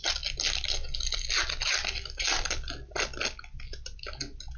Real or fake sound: real